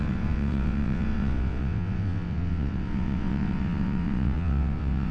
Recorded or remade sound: remade